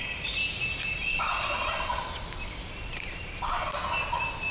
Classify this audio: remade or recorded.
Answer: recorded